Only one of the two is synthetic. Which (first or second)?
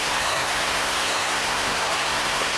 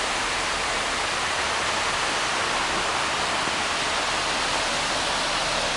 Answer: first